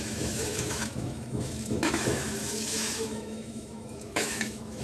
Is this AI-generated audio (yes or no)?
yes